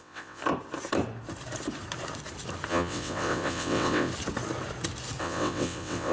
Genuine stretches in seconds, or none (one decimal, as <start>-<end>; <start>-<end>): 0.4-2.7; 4.1-5.2